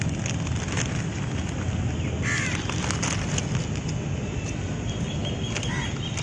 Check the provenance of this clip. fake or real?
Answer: real